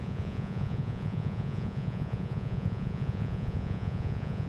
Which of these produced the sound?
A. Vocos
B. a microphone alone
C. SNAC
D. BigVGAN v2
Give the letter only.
A